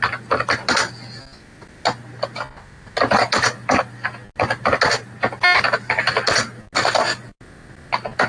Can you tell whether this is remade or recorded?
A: recorded